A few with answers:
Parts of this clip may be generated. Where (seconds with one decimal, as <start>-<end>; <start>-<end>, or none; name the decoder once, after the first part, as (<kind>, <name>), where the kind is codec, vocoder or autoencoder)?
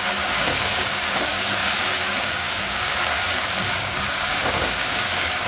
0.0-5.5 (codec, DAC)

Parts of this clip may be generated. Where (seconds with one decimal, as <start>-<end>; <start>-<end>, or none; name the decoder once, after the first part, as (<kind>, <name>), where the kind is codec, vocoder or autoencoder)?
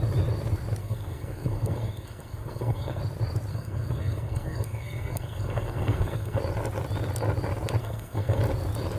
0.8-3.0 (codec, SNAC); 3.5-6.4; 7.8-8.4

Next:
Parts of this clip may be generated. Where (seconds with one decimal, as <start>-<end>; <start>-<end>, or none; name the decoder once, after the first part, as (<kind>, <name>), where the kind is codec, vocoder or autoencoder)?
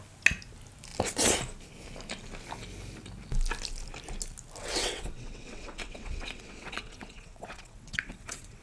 4.6-8.6 (vocoder, WaveNeXt)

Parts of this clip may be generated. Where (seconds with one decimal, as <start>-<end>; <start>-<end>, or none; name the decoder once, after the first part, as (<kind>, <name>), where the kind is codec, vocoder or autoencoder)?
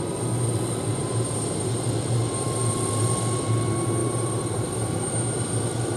1.0-1.7 (vocoder, BigVGAN v2); 4.0-5.0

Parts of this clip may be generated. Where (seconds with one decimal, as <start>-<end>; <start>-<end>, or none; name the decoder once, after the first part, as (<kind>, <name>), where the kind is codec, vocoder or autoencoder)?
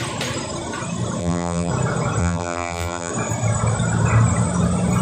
1.2-1.7 (vocoder, BigVGAN v2); 2.2-3.1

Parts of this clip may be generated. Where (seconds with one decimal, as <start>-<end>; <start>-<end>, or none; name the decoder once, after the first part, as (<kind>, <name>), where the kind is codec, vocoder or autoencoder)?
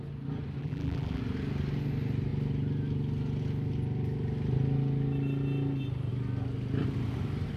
0.6-1.2 (vocoder, BigVGAN v2)